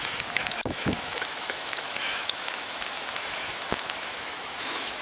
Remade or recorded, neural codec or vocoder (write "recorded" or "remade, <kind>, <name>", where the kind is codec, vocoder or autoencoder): remade, autoencoder, DAC-VAE